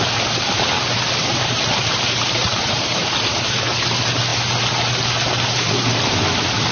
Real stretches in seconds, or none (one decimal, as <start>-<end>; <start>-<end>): 0.0-1.3; 3.7-6.7